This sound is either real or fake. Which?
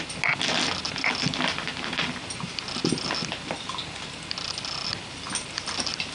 real